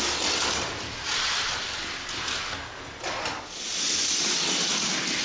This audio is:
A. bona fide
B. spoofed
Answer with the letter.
A